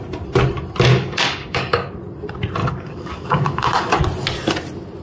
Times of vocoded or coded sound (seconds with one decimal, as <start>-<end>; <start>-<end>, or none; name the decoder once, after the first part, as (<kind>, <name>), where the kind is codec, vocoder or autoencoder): 0.9-1.9 (codec, DAC); 2.6-4.0